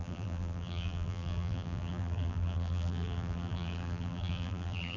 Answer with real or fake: fake